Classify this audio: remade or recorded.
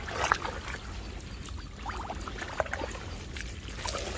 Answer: recorded